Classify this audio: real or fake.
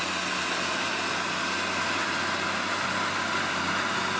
real